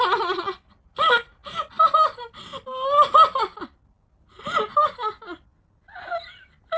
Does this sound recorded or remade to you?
recorded